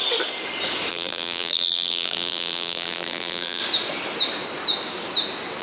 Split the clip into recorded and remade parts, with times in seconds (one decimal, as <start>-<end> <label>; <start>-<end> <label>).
0.0-0.9 recorded; 0.9-3.6 remade; 3.6-5.6 recorded